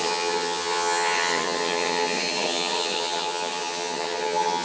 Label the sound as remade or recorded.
remade